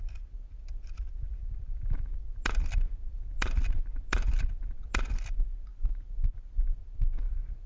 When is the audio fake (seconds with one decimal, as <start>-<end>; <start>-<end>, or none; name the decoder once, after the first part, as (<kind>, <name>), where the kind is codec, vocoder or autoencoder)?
none